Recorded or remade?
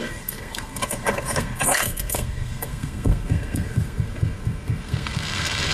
remade